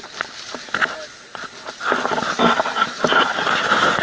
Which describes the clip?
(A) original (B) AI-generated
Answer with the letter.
A